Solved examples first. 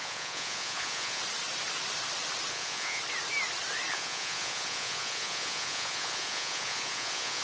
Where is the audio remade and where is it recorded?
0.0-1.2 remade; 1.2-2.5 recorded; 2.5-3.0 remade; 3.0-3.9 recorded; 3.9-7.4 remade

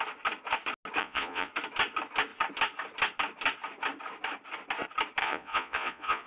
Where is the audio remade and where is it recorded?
0.0-1.0 recorded; 1.0-1.5 remade; 1.5-5.2 recorded; 5.2-6.3 remade